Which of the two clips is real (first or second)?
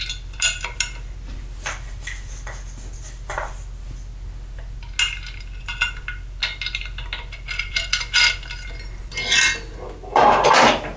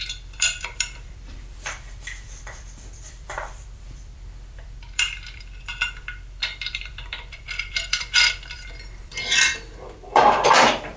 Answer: first